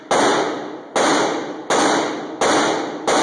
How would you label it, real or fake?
real